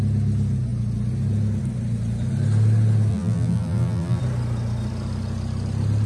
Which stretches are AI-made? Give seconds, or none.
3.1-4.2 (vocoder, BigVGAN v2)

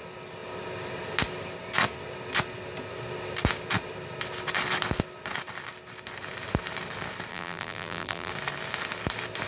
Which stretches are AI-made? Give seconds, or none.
7.3-8.3 (vocoder, BigVGAN v2)

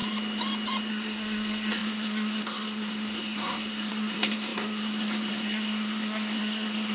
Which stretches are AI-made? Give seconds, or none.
0.9-6.9 (codec, SNAC)

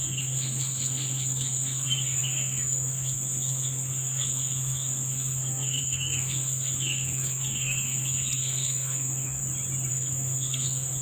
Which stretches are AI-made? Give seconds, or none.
0.0-9.4 (codec, SNAC); 9.9-11.0

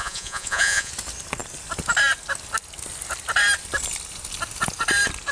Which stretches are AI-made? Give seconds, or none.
0.0-0.9 (vocoder, Vocos)

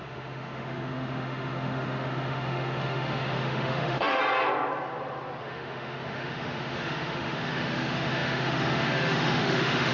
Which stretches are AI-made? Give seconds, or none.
0.0-4.2 (autoencoder, DAC-VAE); 5.4-9.9

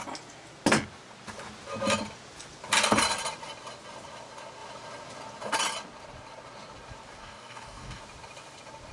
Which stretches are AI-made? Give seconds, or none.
7.2-8.0 (codec, DAC)